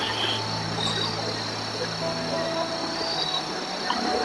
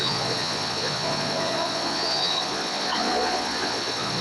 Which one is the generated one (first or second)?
second